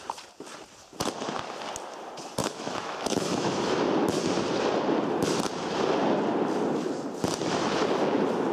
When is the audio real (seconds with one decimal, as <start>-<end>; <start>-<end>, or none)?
0.0-2.4; 3.8-8.5

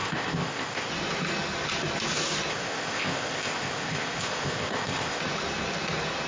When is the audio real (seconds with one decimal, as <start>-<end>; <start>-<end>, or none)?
0.9-2.5; 5.2-6.3

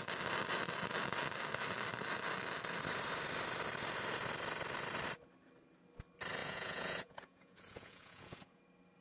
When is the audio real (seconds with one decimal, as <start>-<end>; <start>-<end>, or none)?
0.0-6.4; 8.6-9.0